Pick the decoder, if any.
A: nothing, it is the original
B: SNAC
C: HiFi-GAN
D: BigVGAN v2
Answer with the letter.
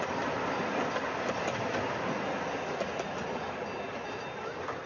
A